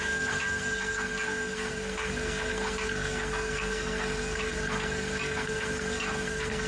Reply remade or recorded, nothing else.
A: remade